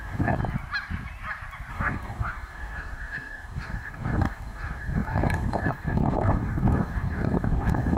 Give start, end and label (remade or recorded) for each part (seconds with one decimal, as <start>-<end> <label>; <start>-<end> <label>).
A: 0.0-0.4 remade; 0.4-1.7 recorded; 1.7-8.0 remade